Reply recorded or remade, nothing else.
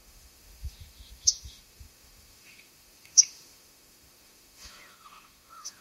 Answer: remade